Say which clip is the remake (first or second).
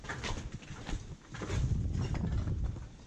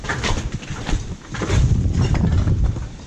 second